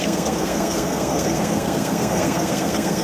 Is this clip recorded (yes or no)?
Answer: no